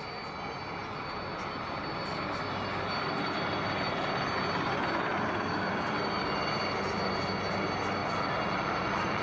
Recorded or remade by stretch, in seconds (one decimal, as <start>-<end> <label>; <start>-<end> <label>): 0.0-9.2 recorded